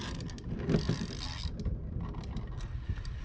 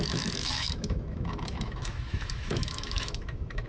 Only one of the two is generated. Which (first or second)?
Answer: second